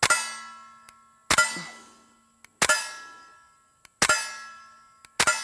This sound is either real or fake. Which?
real